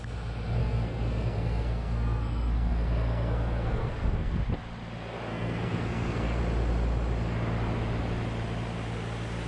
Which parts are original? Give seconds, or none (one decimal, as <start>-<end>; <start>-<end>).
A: 0.0-0.6; 4.4-5.3; 6.4-9.5